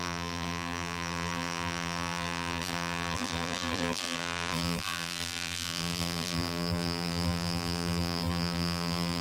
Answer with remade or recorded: remade